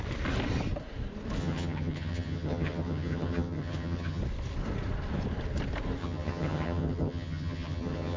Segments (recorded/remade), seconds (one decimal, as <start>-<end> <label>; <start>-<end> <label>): 0.0-1.4 recorded; 1.4-4.2 remade; 4.2-6.0 recorded; 6.0-8.2 remade